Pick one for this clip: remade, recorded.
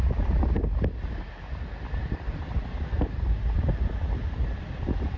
recorded